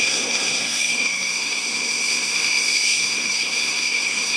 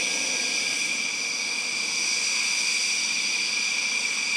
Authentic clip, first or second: second